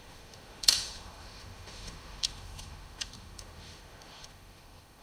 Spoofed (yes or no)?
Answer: yes